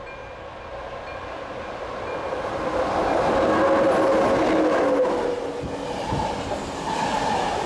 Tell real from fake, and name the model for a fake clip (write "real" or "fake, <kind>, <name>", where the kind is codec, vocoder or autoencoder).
real